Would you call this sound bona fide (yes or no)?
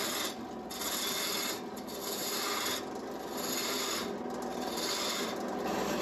yes